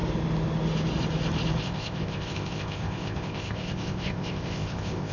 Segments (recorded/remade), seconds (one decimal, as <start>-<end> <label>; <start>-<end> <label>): 0.0-1.6 recorded; 1.6-5.1 remade